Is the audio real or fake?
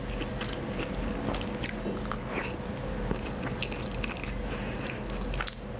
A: real